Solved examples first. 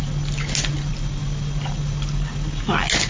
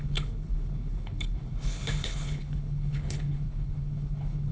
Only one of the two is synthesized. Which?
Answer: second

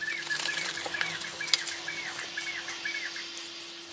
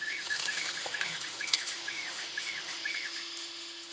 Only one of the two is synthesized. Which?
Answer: second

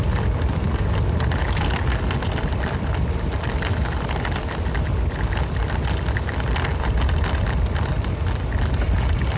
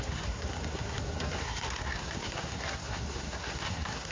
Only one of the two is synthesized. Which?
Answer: second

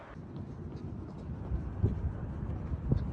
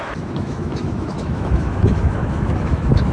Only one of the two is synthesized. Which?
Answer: second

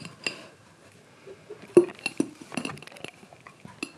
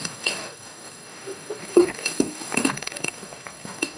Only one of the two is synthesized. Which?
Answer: second